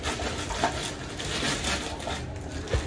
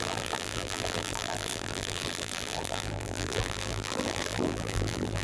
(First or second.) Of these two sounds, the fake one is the second